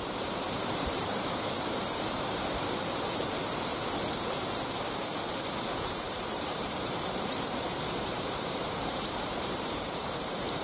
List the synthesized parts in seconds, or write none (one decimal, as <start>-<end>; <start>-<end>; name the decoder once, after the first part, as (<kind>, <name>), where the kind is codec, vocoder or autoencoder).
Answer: 0.0-3.7 (vocoder, BigVGAN v2); 6.1-10.6